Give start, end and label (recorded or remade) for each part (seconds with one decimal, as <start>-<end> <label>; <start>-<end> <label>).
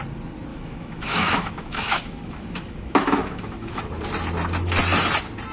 0.0-0.5 recorded; 0.5-3.8 remade; 3.8-5.5 recorded